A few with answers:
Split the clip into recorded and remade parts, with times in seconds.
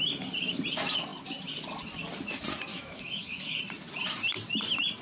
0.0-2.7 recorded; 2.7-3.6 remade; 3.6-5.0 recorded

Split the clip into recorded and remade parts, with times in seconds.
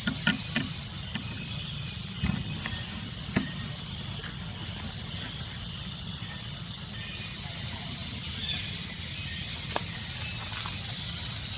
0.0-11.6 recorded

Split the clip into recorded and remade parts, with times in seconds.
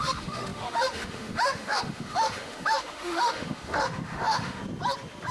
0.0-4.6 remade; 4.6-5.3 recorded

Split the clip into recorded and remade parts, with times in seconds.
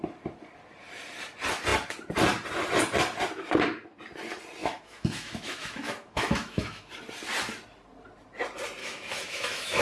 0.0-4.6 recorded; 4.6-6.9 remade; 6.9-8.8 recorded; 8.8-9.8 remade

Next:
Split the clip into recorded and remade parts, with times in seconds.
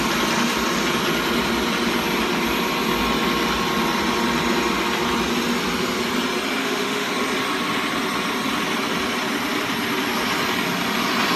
0.0-6.6 recorded; 6.6-7.1 remade; 7.1-11.4 recorded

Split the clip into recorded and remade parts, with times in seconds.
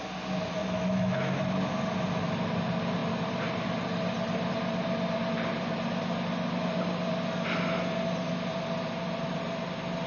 0.0-0.6 recorded; 0.6-1.4 remade; 1.4-10.1 recorded